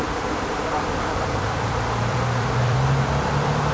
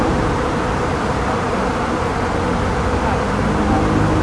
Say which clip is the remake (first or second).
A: first